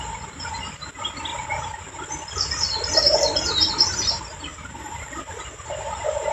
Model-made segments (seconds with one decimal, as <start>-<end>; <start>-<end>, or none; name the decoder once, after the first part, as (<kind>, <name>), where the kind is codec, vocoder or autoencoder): 4.5-5.0 (vocoder, BigVGAN v2)